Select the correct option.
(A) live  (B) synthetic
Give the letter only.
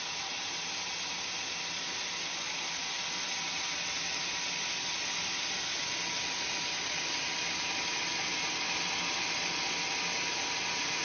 A